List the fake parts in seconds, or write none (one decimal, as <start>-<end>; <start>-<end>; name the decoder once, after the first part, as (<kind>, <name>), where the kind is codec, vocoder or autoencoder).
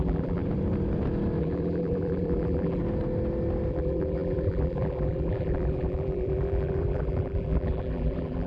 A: 0.0-0.4 (vocoder, BigVGAN v2); 1.4-2.8; 3.7-8.5